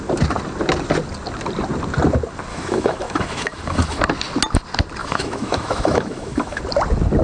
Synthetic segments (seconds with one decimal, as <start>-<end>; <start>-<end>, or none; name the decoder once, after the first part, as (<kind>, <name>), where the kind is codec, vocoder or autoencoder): 2.5-4.0 (autoencoder, DAC-VAE); 5.0-6.6